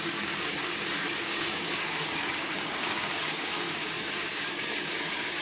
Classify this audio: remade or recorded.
remade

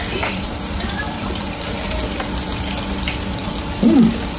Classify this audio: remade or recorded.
remade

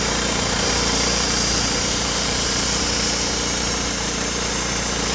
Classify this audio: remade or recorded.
remade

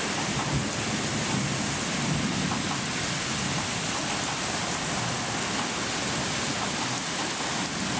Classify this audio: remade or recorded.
recorded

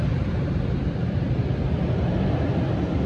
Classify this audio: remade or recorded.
recorded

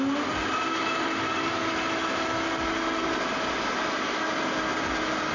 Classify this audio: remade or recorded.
recorded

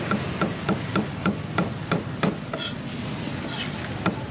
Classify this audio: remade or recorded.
recorded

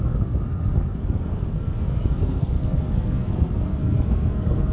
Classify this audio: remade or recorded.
remade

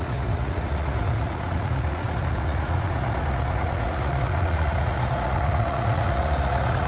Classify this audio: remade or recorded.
remade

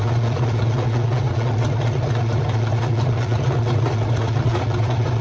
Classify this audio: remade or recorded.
remade